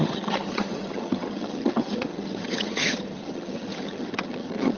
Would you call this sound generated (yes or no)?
yes